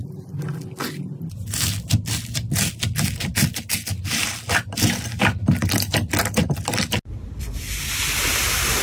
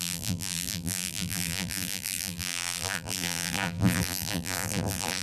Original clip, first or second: first